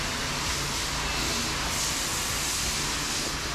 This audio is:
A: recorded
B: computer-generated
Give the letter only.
A